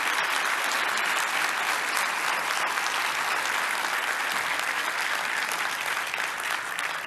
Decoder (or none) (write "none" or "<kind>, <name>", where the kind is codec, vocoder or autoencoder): none